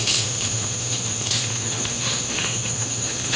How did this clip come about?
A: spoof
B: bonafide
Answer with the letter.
A